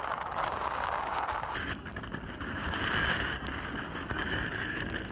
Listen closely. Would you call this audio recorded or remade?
remade